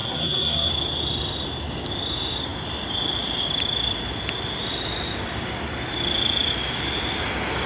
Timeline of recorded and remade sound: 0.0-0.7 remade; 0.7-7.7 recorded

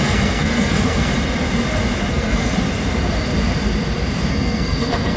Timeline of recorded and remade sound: 0.0-1.1 remade; 1.1-2.1 recorded; 2.1-2.5 remade; 2.5-4.3 recorded; 4.3-5.2 remade